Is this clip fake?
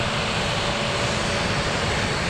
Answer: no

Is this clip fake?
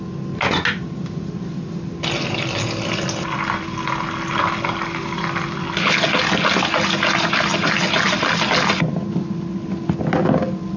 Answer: no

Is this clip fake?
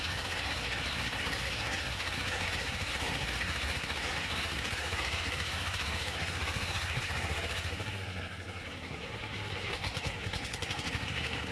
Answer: yes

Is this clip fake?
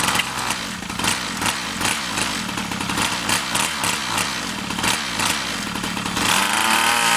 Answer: no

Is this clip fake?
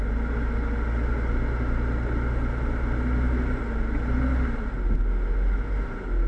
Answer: no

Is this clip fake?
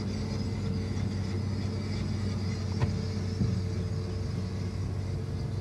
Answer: no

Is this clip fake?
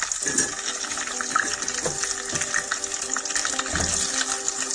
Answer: no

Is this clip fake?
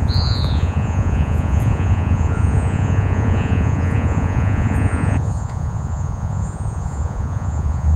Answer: yes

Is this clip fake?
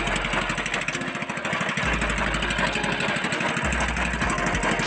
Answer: no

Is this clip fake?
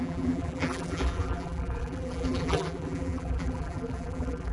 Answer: yes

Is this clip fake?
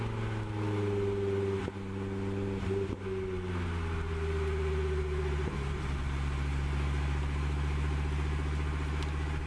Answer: no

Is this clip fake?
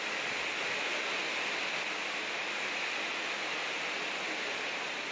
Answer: no